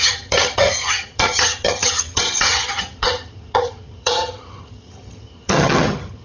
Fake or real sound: fake